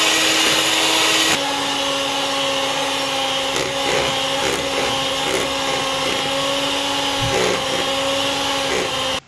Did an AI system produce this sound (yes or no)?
no